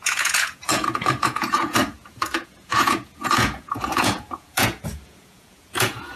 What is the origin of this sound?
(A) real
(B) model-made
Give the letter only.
B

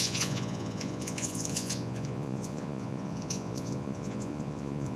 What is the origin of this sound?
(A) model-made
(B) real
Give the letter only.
A